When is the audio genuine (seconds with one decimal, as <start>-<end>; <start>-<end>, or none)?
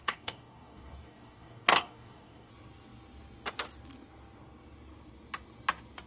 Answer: 2.5-6.1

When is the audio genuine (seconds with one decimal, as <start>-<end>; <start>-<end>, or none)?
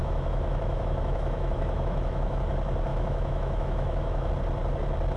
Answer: 2.4-2.9; 4.3-5.2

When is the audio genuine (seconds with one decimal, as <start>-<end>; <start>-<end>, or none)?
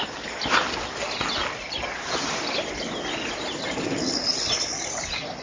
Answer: 0.0-5.4